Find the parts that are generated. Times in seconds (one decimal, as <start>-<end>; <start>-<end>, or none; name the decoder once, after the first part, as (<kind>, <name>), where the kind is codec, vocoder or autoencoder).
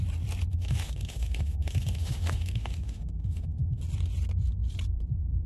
0.5-3.8 (autoencoder, DAC-VAE)